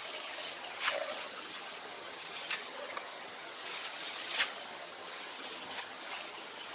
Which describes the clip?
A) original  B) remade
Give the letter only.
B